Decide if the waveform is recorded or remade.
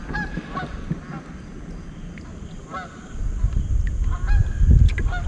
recorded